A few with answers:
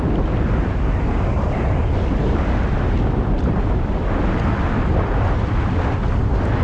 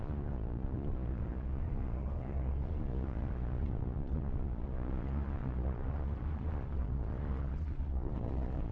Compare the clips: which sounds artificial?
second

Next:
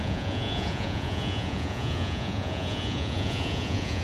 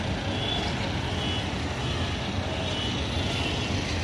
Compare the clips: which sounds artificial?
first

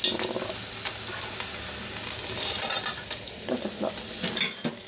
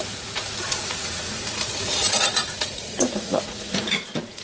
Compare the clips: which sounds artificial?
second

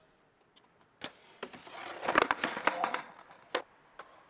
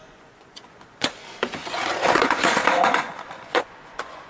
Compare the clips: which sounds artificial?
second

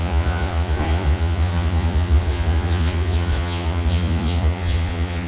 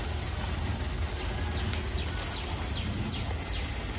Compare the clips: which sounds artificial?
first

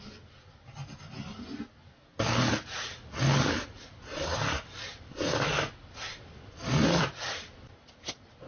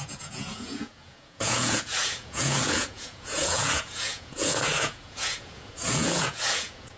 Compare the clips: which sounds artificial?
second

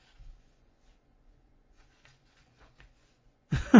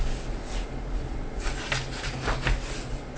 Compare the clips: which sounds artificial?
first